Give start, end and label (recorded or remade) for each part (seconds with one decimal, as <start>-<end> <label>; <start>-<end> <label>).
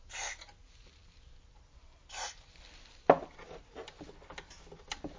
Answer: 0.0-5.2 recorded